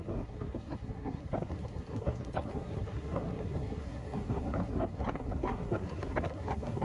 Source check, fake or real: fake